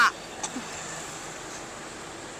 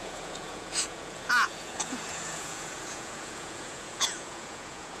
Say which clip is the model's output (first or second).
second